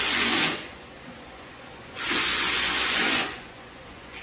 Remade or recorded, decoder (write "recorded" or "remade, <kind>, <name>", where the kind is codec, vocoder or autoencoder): remade, vocoder, Vocos